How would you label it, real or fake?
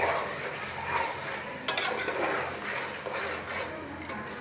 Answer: real